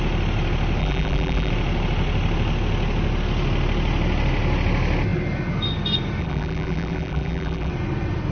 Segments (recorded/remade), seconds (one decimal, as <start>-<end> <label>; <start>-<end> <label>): 0.0-0.8 recorded; 0.8-1.5 remade; 1.5-6.2 recorded; 6.2-7.7 remade; 7.7-8.3 recorded